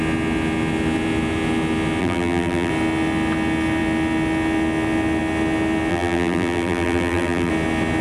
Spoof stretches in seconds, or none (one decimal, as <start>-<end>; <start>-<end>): 2.0-2.7; 5.9-7.5